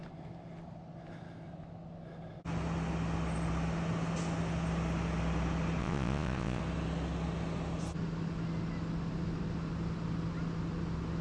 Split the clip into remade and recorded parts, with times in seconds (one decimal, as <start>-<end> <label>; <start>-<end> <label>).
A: 0.0-5.8 recorded; 5.8-6.6 remade; 6.6-11.2 recorded

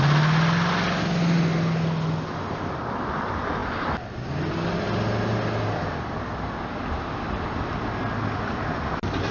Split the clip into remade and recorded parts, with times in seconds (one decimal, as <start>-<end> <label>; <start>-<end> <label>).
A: 0.0-9.3 recorded

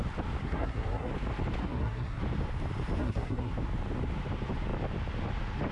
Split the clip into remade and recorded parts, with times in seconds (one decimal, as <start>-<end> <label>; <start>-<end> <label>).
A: 0.0-0.4 recorded; 0.4-1.1 remade; 1.1-1.6 recorded; 1.6-2.2 remade; 2.2-3.0 recorded; 3.0-3.5 remade; 3.5-5.7 recorded

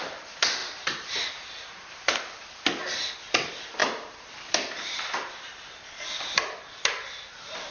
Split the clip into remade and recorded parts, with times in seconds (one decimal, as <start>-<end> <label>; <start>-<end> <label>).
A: 0.0-0.6 recorded; 0.6-2.5 remade; 2.5-3.8 recorded; 3.8-5.8 remade; 5.8-7.7 recorded